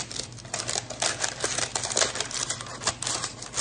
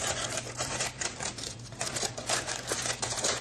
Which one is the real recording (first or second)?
first